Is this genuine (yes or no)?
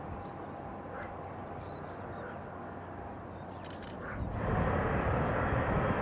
yes